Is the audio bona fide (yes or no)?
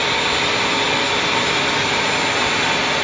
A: yes